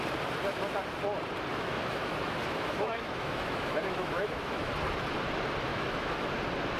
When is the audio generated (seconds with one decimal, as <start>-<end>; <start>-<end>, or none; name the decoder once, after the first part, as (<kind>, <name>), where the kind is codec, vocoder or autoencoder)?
1.5-4.7 (autoencoder, DAC-VAE); 5.7-6.3